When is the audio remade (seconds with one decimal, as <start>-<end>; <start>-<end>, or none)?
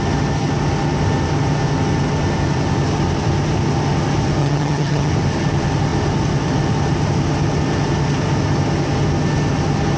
4.4-5.1